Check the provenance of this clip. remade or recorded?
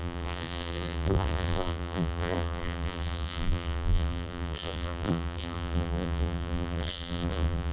remade